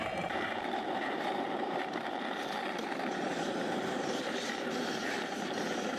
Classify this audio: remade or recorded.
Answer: remade